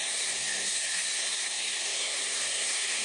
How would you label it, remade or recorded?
remade